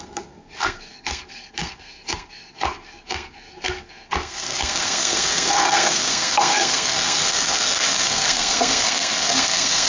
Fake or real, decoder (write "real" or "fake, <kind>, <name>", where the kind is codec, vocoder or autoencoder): fake, codec, SNAC